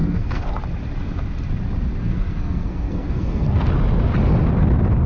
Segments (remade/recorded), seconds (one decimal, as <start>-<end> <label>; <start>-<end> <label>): 0.0-0.5 remade; 0.5-2.0 recorded; 2.0-3.7 remade; 3.7-5.1 recorded